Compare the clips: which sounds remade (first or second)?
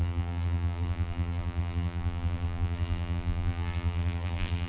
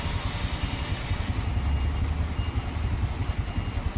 first